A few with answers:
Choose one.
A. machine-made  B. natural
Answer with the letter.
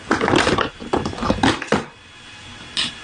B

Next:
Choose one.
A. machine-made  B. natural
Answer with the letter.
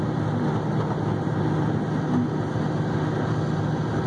B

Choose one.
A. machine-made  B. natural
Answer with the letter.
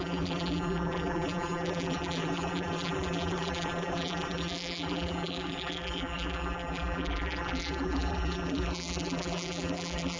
A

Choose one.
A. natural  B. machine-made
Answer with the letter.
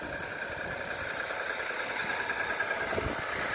A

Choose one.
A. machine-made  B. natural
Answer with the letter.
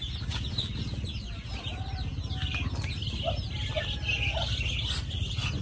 B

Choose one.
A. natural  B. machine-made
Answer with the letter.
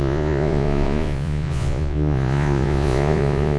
B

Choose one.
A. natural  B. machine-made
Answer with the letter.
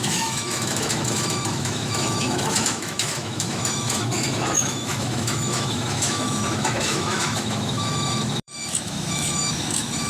B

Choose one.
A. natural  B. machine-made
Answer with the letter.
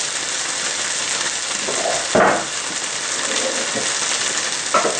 A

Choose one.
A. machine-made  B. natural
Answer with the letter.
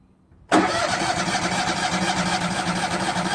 B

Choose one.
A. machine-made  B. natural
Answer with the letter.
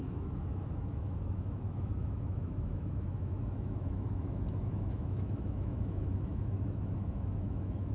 A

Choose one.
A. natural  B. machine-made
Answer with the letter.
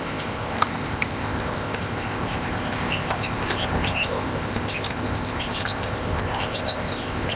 B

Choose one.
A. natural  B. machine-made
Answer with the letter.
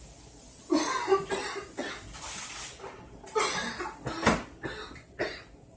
A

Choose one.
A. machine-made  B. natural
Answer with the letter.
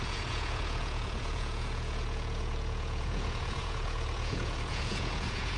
A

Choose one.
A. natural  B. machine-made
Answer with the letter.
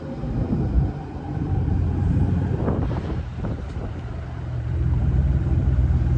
B